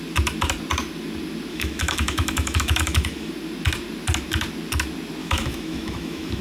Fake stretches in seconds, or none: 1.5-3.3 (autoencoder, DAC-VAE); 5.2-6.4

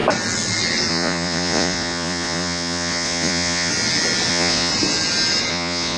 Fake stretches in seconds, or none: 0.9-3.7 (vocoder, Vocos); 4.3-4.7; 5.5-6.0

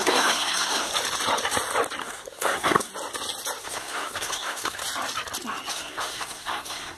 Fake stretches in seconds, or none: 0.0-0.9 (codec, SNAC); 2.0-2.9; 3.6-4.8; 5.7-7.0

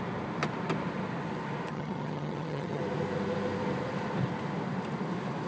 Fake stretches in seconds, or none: 1.7-2.8 (vocoder, HiFi-GAN)

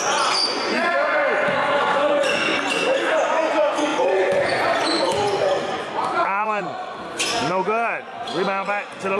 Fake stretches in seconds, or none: 0.0-1.2 (vocoder, Vocos); 1.8-2.5; 3.5-9.2

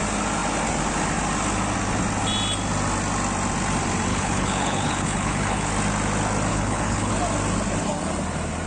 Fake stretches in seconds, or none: 4.1-5.7 (codec, HILCodec); 6.5-7.1

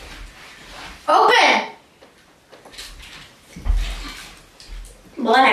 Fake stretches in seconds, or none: none

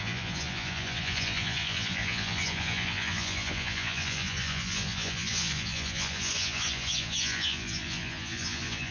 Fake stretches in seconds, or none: 0.0-8.9 (vocoder, Vocos)